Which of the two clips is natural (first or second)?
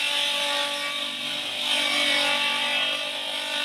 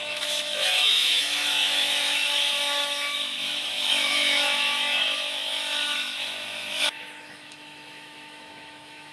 first